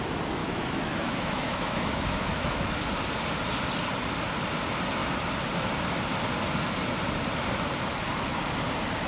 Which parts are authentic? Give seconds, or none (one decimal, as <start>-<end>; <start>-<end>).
0.0-0.4; 2.7-9.1